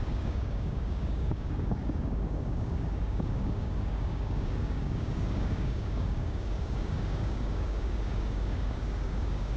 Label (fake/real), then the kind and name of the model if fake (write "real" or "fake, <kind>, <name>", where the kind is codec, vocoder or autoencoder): fake, codec, DAC